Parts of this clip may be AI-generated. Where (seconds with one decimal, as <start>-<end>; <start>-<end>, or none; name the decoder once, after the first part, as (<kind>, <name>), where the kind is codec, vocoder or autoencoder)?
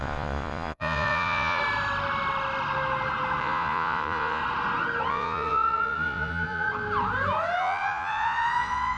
0.0-1.6 (vocoder, Vocos); 3.4-4.4; 5.1-6.7; 7.6-9.0